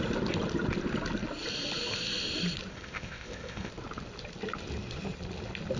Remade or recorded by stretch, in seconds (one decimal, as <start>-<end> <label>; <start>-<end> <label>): 0.0-2.7 recorded; 2.7-3.7 remade; 3.7-5.8 recorded